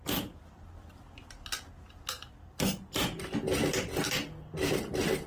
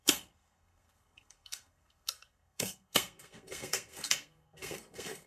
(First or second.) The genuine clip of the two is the first